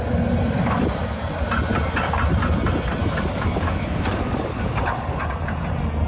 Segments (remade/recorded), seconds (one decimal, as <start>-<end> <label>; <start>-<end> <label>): 0.0-3.0 recorded; 3.0-5.2 remade; 5.2-6.1 recorded